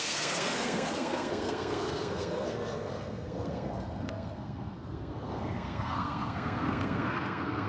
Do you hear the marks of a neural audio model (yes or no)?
yes